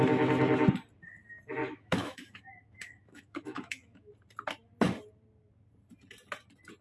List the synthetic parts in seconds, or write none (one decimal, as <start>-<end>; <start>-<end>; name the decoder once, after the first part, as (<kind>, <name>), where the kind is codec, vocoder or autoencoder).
1.6-4.1 (autoencoder, DAC-VAE)